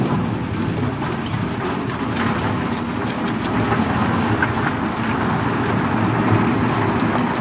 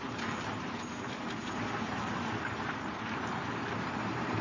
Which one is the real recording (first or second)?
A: first